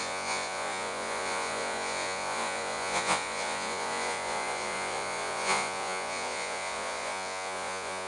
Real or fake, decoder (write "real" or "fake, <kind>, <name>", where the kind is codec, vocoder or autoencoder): fake, vocoder, Vocos